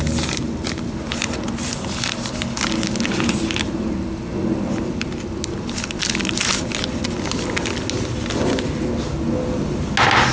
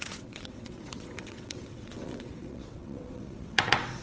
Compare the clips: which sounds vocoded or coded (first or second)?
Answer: second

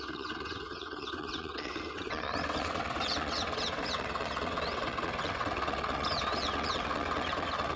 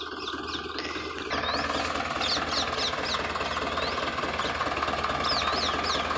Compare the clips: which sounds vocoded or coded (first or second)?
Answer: first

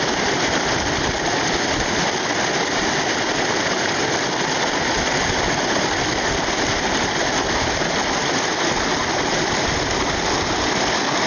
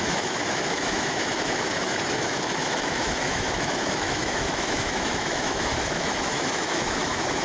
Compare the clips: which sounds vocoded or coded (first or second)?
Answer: second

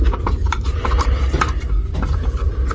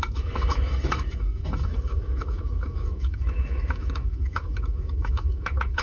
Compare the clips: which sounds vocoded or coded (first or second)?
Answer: second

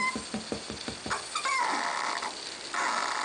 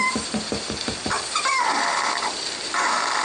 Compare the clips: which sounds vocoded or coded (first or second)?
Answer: second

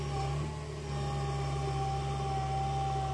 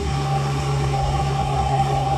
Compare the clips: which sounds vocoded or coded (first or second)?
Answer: second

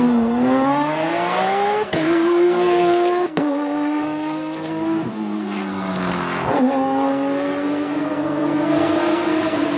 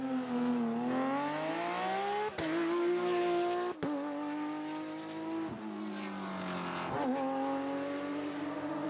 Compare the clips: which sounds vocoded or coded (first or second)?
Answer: first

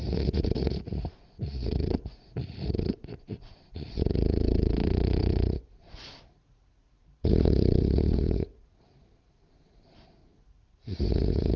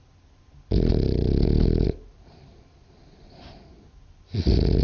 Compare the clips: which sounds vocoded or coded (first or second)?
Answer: first